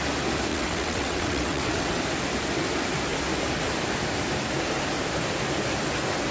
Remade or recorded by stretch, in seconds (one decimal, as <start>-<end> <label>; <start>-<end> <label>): 0.0-0.5 recorded; 0.5-2.0 remade; 2.0-6.3 recorded